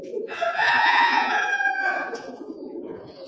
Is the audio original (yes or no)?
no